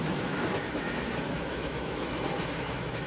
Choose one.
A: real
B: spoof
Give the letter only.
B